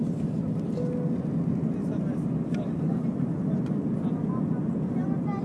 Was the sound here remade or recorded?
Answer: recorded